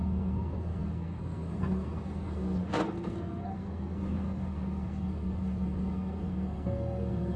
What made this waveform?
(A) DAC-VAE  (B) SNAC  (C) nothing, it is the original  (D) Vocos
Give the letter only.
B